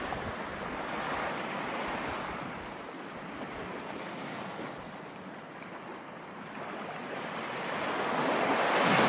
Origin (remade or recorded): recorded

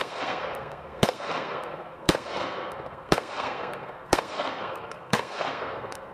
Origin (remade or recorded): remade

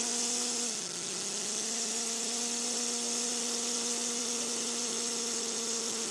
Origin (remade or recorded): recorded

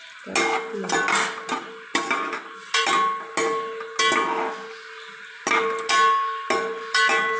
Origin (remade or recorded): recorded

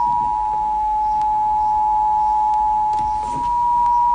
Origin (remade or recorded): recorded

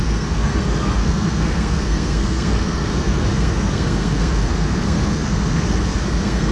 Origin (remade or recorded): remade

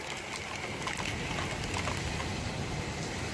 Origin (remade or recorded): recorded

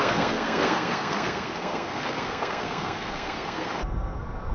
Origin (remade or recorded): remade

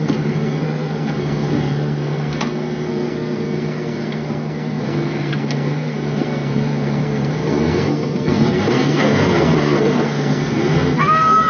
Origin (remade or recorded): remade